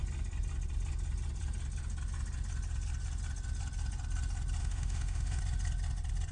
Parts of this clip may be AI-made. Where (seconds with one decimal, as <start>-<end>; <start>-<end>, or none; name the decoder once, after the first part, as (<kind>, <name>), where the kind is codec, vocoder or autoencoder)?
4.6-5.4 (autoencoder, DAC-VAE)